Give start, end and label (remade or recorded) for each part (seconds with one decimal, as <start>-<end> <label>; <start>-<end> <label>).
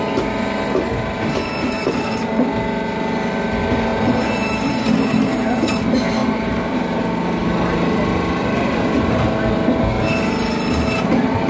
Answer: 0.0-3.9 recorded; 3.9-4.7 remade; 4.7-6.2 recorded; 6.2-7.0 remade; 7.0-7.4 recorded; 7.4-8.0 remade; 8.0-11.5 recorded